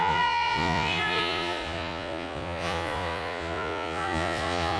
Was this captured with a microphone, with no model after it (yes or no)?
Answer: no